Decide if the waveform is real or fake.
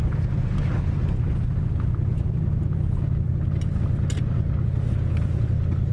real